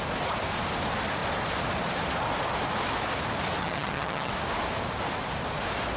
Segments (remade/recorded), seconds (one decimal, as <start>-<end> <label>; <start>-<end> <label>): 0.0-3.6 recorded; 3.6-4.3 remade; 4.3-6.0 recorded